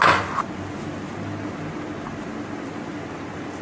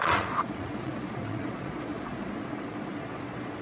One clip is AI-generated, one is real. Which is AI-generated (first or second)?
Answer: second